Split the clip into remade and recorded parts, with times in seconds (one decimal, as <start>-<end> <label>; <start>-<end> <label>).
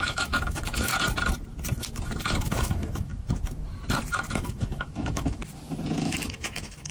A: 0.0-0.9 remade; 0.9-2.2 recorded; 2.2-3.1 remade; 3.1-4.1 recorded; 4.1-5.4 remade; 5.4-6.0 recorded; 6.0-6.9 remade